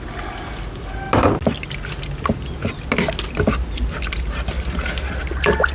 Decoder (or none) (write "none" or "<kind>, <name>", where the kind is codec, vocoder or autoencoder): none